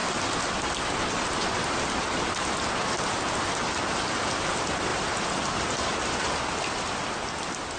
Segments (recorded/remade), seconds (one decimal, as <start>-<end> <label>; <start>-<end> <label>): 0.0-7.8 recorded